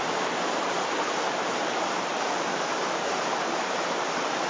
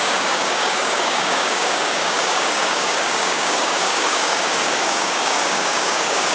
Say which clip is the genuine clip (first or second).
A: first